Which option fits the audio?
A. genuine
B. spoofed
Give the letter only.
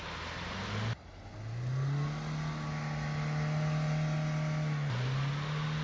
A